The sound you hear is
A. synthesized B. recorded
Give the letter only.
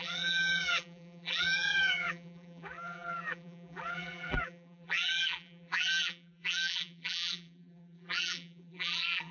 A